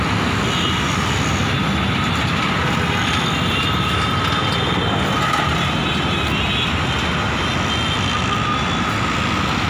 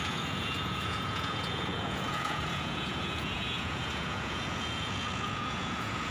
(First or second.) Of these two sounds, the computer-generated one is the second